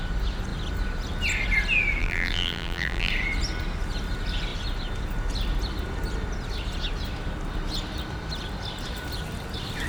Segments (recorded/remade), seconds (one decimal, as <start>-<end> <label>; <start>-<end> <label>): 0.0-2.0 recorded; 2.0-3.1 remade; 3.1-9.9 recorded